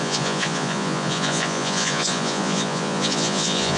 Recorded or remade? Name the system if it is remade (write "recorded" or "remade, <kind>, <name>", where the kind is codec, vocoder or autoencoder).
remade, vocoder, Vocos